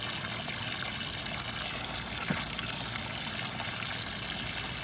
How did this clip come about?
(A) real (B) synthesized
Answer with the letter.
A